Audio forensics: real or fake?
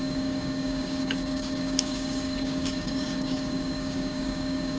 fake